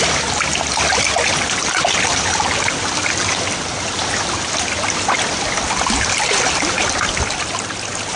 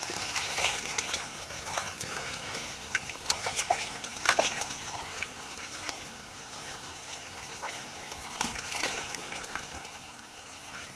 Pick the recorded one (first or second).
first